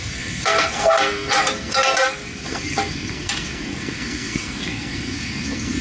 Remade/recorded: remade